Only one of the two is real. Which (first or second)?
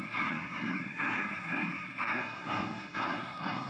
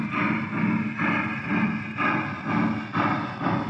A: second